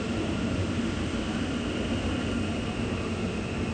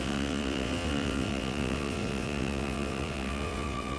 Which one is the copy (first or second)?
second